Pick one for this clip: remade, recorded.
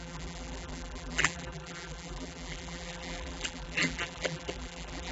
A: remade